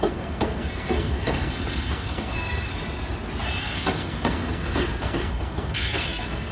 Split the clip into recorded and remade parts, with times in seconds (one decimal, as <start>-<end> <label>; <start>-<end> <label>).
0.0-2.7 remade; 2.7-3.6 recorded; 3.6-6.5 remade